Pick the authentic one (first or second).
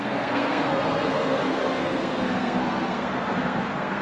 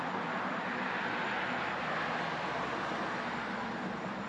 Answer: second